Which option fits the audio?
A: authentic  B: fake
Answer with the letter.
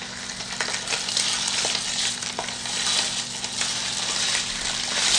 A